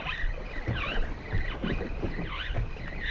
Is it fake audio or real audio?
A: real